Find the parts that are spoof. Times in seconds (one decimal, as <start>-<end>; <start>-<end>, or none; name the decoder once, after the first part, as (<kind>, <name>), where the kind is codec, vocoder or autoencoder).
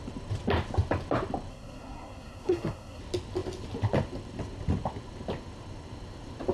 1.5-3.0 (codec, SNAC)